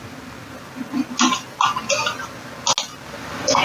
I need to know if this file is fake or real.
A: real